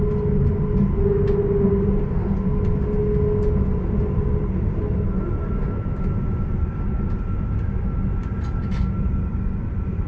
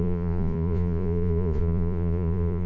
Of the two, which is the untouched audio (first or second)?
first